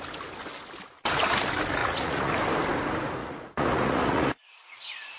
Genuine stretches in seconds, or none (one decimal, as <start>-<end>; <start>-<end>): 0.0-1.8; 2.3-3.2